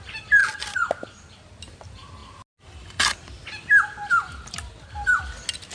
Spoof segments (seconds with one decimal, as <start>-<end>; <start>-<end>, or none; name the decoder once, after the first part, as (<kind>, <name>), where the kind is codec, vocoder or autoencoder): none